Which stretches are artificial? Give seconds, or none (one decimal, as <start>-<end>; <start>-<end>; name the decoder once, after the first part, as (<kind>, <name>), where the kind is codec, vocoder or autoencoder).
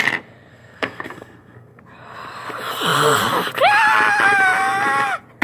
0.5-1.8 (codec, SNAC)